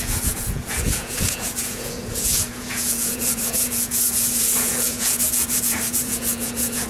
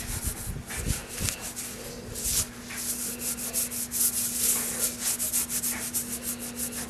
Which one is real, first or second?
second